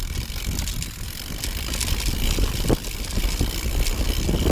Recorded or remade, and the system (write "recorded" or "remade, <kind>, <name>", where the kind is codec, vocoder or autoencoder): recorded